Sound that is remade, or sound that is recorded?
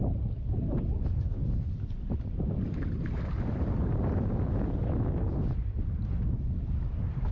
recorded